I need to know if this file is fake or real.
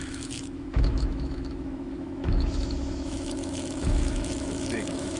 fake